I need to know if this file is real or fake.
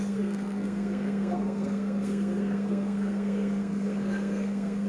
fake